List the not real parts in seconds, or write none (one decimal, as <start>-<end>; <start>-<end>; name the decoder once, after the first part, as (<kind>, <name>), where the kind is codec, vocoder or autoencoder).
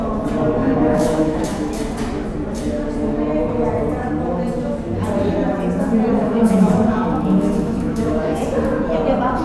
0.6-1.8 (autoencoder, DAC-VAE); 6.2-8.4